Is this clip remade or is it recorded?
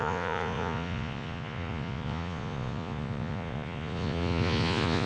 remade